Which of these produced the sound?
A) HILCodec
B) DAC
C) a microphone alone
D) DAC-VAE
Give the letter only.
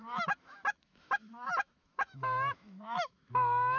D